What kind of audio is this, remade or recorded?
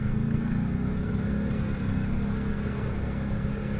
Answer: remade